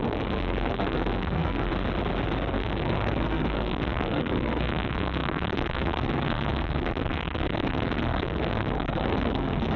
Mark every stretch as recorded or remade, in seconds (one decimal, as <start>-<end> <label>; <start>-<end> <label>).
0.0-1.7 remade; 1.7-2.5 recorded; 2.5-9.8 remade